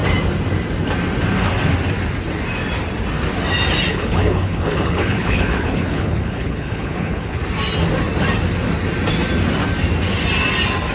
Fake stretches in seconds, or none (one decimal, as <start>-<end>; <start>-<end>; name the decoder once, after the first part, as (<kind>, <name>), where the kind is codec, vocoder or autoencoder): 3.9-7.4 (codec, HILCodec)